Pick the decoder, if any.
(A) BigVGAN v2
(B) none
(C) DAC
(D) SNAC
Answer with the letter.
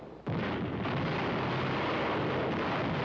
B